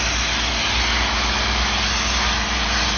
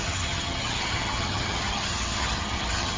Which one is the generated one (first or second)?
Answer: second